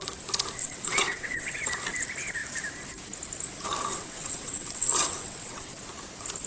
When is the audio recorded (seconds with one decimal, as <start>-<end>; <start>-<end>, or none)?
0.0-0.6; 1.6-3.9; 5.8-6.5